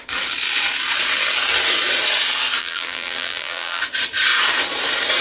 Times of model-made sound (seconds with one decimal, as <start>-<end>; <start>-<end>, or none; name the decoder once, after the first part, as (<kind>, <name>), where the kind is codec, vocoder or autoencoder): 2.6-3.8 (vocoder, BigVGAN v2)